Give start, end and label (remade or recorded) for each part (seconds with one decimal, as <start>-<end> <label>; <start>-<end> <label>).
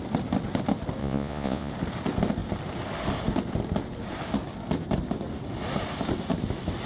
0.0-1.0 recorded; 1.0-1.7 remade; 1.7-6.9 recorded